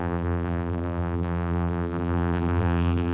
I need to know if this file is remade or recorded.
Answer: remade